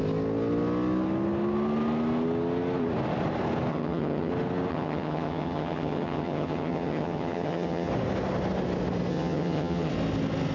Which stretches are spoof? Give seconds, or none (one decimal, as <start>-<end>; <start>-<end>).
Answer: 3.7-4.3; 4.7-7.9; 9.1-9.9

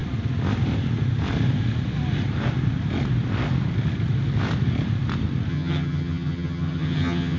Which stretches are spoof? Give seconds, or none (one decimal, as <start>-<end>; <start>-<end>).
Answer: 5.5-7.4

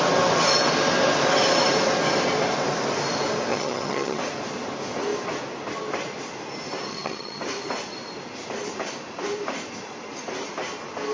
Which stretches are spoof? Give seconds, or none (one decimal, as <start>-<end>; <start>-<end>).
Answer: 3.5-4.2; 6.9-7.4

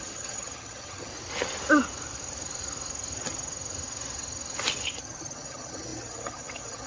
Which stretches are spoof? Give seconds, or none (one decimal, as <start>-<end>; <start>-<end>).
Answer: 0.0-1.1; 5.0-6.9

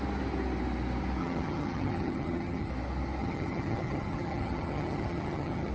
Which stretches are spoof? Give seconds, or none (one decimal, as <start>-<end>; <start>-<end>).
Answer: 1.2-2.7; 3.2-5.7

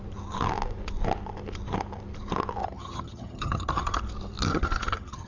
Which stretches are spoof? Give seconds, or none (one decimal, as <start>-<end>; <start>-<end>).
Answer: 2.6-4.0; 4.5-5.3

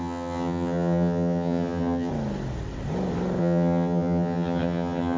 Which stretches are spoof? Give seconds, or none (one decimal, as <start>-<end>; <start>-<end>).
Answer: 0.0-2.1; 3.4-5.2

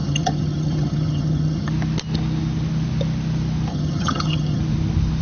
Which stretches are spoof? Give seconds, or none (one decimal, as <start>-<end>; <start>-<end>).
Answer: 0.0-1.7; 3.7-4.6